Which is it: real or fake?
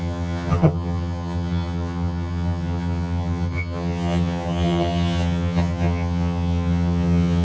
fake